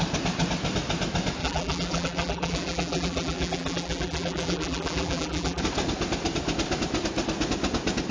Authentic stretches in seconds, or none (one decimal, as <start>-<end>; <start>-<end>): 0.0-1.4; 5.6-8.1